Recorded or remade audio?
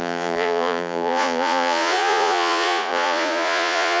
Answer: remade